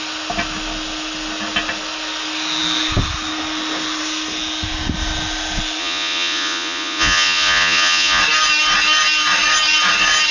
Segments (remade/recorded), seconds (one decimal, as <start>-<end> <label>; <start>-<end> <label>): 0.0-5.8 recorded; 5.8-8.2 remade; 8.2-10.3 recorded